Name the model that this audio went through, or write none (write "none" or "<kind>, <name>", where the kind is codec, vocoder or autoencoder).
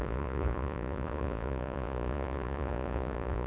vocoder, Vocos